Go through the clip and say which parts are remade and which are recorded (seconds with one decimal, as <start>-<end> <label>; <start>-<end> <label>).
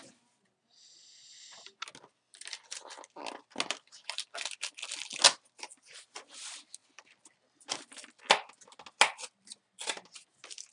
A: 0.0-10.7 recorded